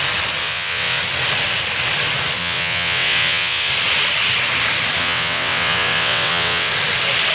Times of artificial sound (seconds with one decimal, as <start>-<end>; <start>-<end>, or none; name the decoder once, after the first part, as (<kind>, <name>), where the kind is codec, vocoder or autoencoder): 0.4-1.0 (vocoder, WaveNeXt); 2.4-3.7; 5.0-6.7